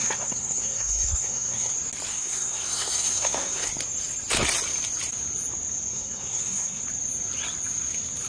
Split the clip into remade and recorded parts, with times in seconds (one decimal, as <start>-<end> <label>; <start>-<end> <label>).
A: 0.0-1.7 remade; 1.7-2.1 recorded; 2.1-3.7 remade; 3.7-5.9 recorded; 5.9-6.8 remade; 6.8-8.3 recorded